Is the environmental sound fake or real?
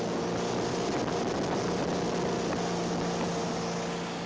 real